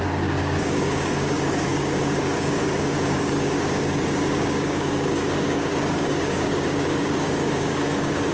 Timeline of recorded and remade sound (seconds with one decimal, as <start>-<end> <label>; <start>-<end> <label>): 0.0-8.3 remade